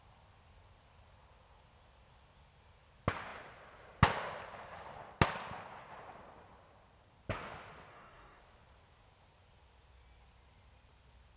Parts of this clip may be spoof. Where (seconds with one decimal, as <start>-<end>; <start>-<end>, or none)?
7.9-8.4